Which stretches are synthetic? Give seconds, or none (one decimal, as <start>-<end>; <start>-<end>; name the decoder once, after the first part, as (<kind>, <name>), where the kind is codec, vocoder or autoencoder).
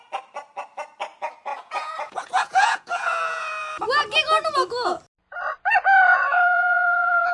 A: 1.5-3.8 (vocoder, Vocos); 6.1-7.3